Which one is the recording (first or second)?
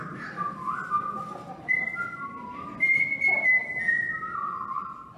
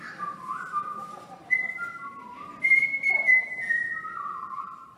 first